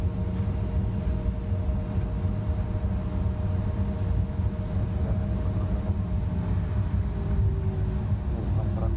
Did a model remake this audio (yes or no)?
no